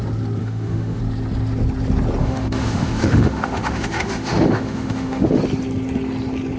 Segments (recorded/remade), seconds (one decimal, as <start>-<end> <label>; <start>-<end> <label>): 0.0-0.4 recorded; 0.4-1.0 remade; 1.0-2.2 recorded; 2.2-5.4 remade; 5.4-6.6 recorded